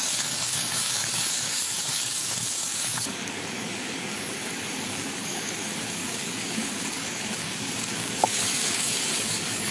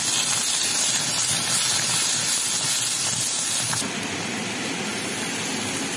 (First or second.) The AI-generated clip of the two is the first